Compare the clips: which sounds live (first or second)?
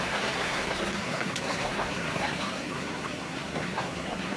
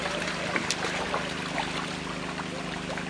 second